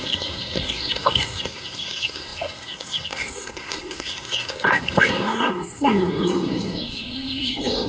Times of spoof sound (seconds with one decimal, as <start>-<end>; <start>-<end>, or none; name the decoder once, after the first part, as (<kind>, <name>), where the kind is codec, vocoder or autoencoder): 0.0-7.9 (codec, SNAC)